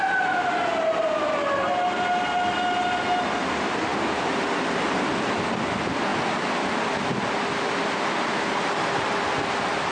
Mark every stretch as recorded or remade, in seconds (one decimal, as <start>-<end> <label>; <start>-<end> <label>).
0.0-3.9 recorded; 3.9-4.5 remade; 4.5-9.9 recorded